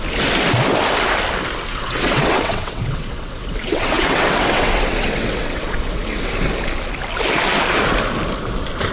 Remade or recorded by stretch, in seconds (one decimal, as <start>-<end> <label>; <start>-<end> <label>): 0.0-1.7 recorded; 1.7-6.3 remade; 6.3-8.9 recorded